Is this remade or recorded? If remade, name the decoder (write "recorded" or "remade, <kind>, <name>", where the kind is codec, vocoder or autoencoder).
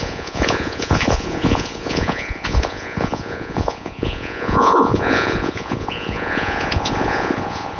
remade, vocoder, Vocos